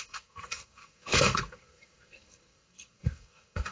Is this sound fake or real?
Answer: fake